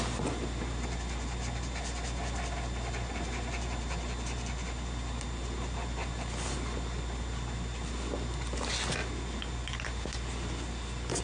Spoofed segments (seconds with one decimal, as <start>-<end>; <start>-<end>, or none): none